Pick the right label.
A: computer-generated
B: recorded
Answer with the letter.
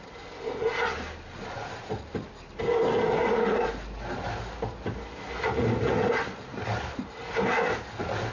B